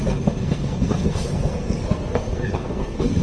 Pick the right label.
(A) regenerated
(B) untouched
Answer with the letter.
A